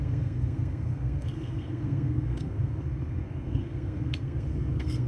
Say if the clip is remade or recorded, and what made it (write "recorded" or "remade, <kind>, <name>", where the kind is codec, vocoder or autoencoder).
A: remade, codec, SNAC